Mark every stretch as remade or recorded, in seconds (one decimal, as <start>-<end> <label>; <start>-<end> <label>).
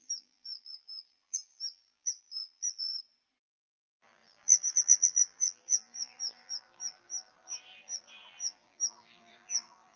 0.0-2.9 remade; 2.9-3.5 recorded; 3.5-10.0 remade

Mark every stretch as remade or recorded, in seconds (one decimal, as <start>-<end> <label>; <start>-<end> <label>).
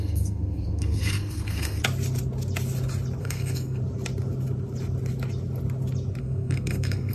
0.0-1.8 remade; 1.8-3.2 recorded; 3.2-3.8 remade; 3.8-6.2 recorded; 6.2-7.1 remade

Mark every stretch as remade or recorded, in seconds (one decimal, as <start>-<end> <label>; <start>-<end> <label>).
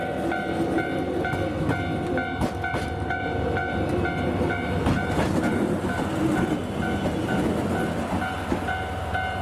0.0-9.4 recorded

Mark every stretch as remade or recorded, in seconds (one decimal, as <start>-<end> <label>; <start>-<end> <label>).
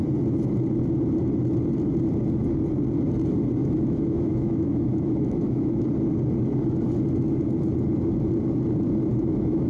0.0-3.6 recorded; 3.6-5.9 remade; 5.9-9.1 recorded; 9.1-9.7 remade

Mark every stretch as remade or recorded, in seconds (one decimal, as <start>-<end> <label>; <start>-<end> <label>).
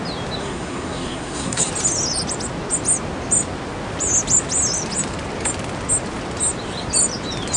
0.0-0.4 recorded; 0.4-1.7 remade; 1.7-7.6 recorded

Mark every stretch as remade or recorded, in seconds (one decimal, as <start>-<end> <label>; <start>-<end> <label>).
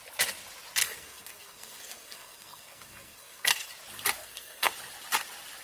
0.0-0.8 recorded; 0.8-3.7 remade; 3.7-4.2 recorded; 4.2-4.7 remade; 4.7-5.6 recorded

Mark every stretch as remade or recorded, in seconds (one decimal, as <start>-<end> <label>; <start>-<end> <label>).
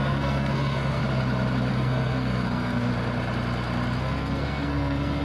0.0-1.0 remade; 1.0-1.7 recorded; 1.7-2.9 remade; 2.9-4.0 recorded; 4.0-5.2 remade